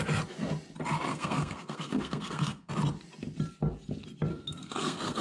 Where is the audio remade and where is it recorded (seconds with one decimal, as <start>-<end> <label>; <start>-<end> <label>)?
0.0-1.1 recorded; 1.1-2.7 remade; 2.7-4.3 recorded; 4.3-5.2 remade